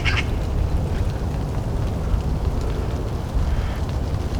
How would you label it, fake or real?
real